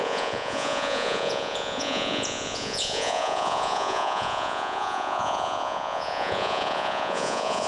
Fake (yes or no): yes